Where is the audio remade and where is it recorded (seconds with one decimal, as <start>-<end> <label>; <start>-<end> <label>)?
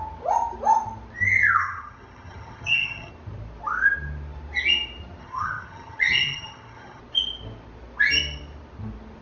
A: 0.0-1.6 recorded; 1.6-3.1 remade; 3.1-5.2 recorded; 5.2-7.0 remade; 7.0-9.2 recorded